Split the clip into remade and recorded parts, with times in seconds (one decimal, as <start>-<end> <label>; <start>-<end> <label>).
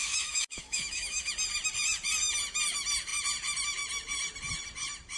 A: 0.0-1.3 remade; 1.3-5.2 recorded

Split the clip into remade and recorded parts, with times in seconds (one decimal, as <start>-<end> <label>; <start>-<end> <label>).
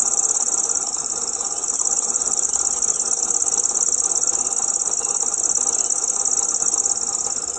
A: 0.0-2.5 remade; 2.5-7.6 recorded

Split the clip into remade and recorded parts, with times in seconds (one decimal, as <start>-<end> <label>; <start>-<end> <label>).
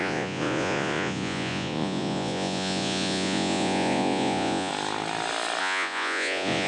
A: 0.0-4.7 remade; 4.7-5.6 recorded; 5.6-6.7 remade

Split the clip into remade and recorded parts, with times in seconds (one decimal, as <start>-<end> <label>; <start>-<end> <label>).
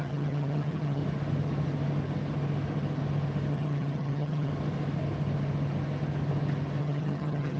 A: 0.0-1.0 remade; 1.0-3.5 recorded; 3.5-4.5 remade; 4.5-6.8 recorded; 6.8-7.6 remade